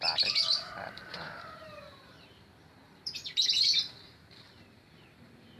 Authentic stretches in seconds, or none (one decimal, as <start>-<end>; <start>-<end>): 0.0-0.5; 3.9-5.6